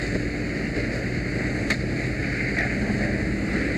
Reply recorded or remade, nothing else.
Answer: recorded